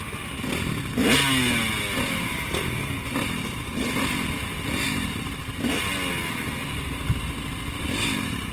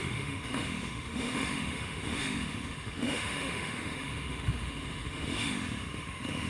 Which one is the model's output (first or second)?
second